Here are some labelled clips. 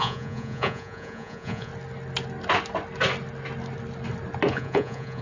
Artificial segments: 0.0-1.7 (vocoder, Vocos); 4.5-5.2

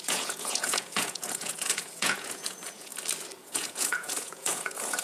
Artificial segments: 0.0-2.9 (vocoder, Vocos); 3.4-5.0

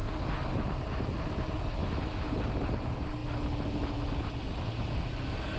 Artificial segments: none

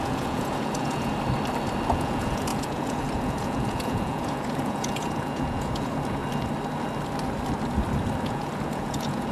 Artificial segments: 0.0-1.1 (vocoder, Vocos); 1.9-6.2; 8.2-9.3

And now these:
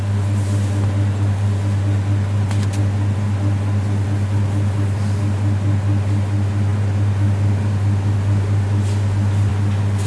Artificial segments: none

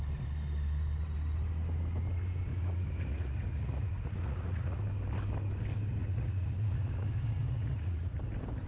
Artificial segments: 2.5-4.8 (vocoder, Vocos); 6.0-8.2

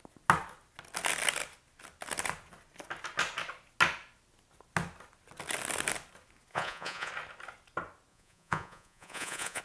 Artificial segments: 6.5-7.1 (vocoder, Vocos); 8.1-9.6

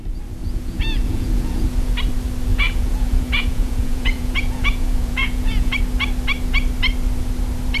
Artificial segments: 0.4-1.9 (vocoder, Vocos); 2.5-5.8